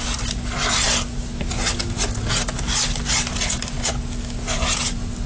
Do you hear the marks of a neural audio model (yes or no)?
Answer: no